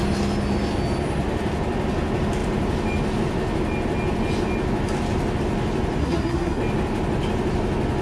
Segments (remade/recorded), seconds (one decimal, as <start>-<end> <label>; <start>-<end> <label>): 0.0-6.0 recorded; 6.0-6.6 remade; 6.6-8.0 recorded